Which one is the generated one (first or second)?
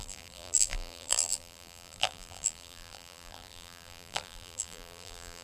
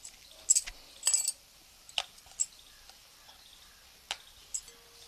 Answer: first